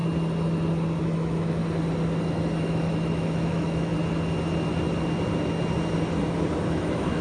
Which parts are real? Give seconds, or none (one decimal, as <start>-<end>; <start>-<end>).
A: 0.0-1.0; 1.6-2.6; 3.9-6.7